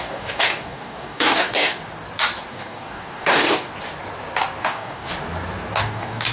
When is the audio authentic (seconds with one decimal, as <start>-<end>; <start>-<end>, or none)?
1.8-2.5; 3.7-4.6; 5.1-5.8